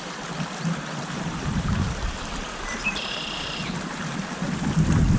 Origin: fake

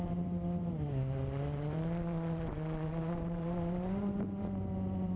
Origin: fake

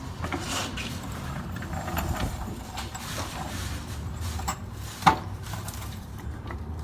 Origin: fake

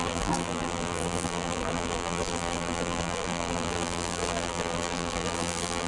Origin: fake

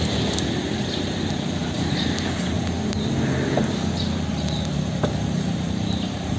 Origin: fake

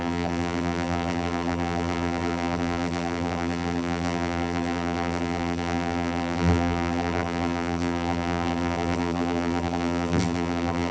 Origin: fake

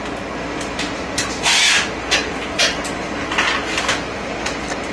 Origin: real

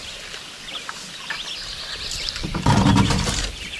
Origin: real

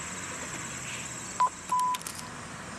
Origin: real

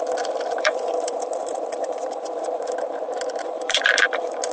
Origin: fake